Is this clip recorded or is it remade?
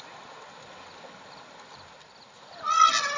recorded